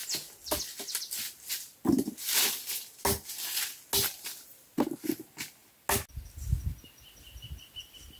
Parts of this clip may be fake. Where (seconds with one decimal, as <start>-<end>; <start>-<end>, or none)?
none